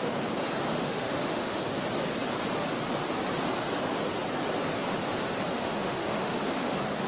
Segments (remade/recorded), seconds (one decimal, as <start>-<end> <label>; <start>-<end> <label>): 0.0-0.7 recorded; 0.7-1.6 remade; 1.6-5.5 recorded; 5.5-7.1 remade